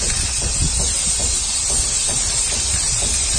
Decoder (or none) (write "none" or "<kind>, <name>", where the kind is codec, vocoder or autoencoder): none